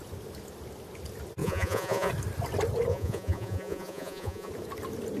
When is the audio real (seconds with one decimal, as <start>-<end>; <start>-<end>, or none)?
0.0-1.4; 2.1-2.9; 4.5-5.2